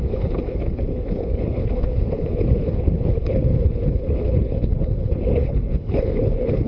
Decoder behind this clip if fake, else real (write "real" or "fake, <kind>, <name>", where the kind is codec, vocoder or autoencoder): fake, codec, HILCodec